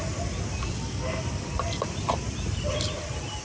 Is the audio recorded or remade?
recorded